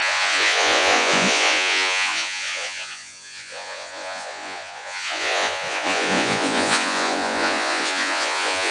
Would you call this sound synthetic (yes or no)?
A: yes